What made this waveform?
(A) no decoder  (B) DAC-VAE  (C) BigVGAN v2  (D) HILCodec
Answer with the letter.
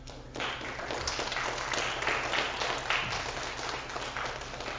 A